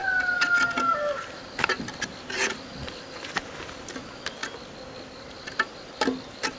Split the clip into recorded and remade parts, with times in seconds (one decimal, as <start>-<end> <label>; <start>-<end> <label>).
0.0-6.6 recorded